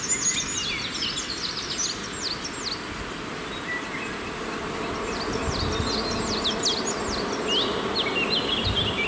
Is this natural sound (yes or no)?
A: yes